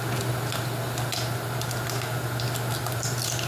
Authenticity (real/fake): real